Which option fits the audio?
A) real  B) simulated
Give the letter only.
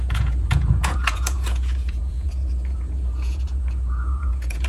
B